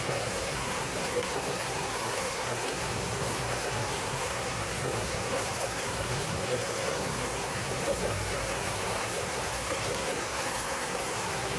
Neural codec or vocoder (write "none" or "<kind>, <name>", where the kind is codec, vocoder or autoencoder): codec, SNAC